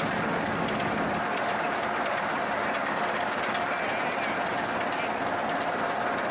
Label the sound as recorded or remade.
recorded